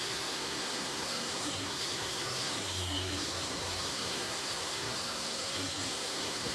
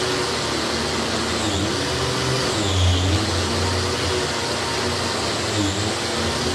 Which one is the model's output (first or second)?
first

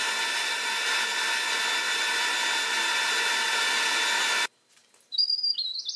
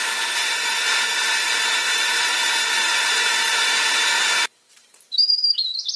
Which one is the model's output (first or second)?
second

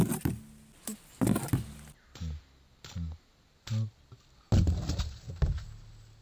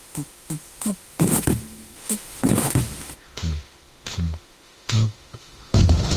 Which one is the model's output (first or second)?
second